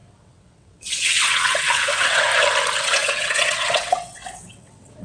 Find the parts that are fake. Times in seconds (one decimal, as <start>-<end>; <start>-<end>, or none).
0.0-2.3; 2.8-5.0